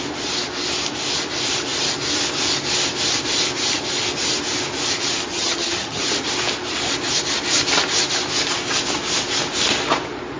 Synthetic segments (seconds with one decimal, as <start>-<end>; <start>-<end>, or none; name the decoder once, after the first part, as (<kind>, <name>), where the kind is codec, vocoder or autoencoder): 5.3-6.0 (vocoder, HiFi-GAN)